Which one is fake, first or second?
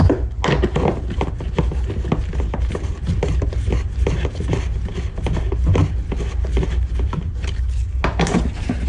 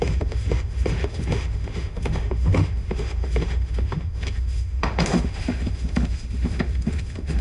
second